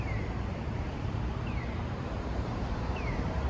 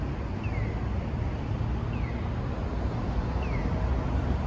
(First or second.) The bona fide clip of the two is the second